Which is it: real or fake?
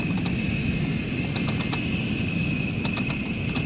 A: real